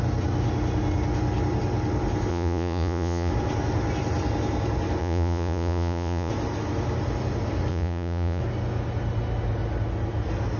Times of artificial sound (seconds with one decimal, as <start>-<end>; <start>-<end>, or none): 2.3-3.3; 5.0-6.3; 7.7-8.4